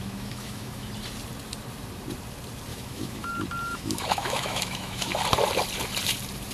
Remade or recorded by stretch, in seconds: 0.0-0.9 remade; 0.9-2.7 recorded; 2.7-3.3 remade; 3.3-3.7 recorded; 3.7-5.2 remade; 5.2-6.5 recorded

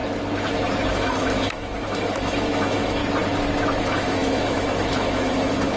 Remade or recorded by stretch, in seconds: 0.0-0.9 recorded; 0.9-3.0 remade; 3.0-3.8 recorded; 3.8-5.8 remade

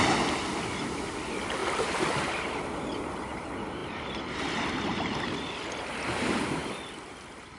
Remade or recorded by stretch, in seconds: 0.0-1.6 recorded; 1.6-2.6 remade; 2.6-6.6 recorded; 6.6-7.6 remade

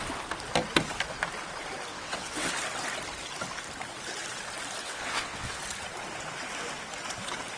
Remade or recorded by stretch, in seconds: 0.0-1.9 recorded; 1.9-2.5 remade; 2.5-4.8 recorded; 4.8-5.6 remade; 5.6-7.6 recorded

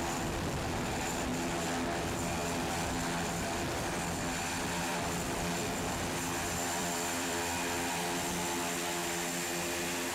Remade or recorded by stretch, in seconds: 0.0-6.8 recorded; 6.8-7.4 remade; 7.4-10.1 recorded

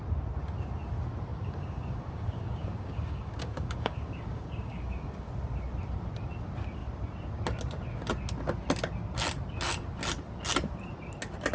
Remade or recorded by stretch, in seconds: 0.0-1.3 recorded; 1.3-5.3 remade; 5.3-11.5 recorded

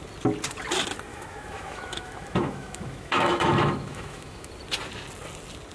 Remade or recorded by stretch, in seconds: 0.0-1.1 recorded; 1.1-4.5 remade; 4.5-5.7 recorded

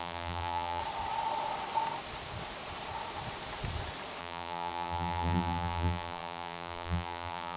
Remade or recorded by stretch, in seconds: 0.0-0.8 remade; 0.8-4.2 recorded; 4.2-7.6 remade